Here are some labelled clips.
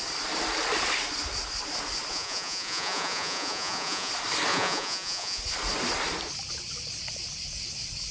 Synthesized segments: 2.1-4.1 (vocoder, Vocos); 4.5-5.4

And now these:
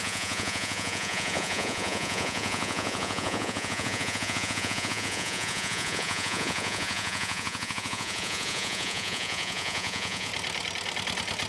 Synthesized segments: 0.0-10.3 (vocoder, Vocos)

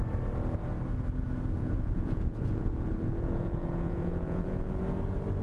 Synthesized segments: 1.6-4.8 (vocoder, Vocos)

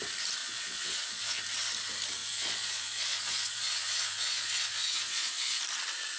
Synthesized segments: 0.4-1.4 (vocoder, Vocos); 2.2-5.6